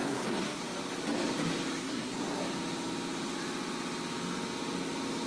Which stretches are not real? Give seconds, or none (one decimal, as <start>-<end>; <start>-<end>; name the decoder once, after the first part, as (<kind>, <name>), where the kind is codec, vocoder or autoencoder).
0.0-0.6 (codec, SNAC); 1.8-2.4